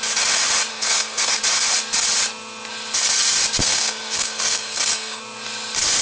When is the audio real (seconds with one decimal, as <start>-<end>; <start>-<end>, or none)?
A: 0.0-0.7; 1.4-3.6; 5.2-6.0

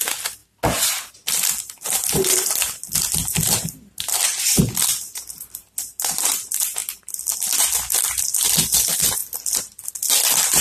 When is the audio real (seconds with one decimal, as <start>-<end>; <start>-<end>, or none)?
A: 0.0-10.6

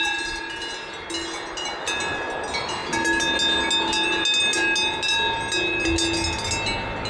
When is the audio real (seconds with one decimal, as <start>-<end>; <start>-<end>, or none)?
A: 0.0-7.1

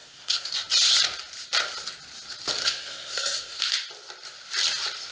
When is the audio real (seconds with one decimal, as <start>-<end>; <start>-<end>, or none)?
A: 0.5-2.6; 3.6-5.1

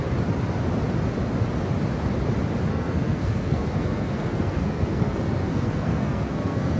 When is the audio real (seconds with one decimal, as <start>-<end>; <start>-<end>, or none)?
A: 0.0-2.7

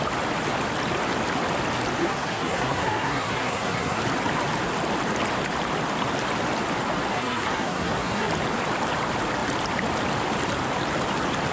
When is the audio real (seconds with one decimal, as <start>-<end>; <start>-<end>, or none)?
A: 0.0-2.0; 4.0-7.1; 8.3-11.5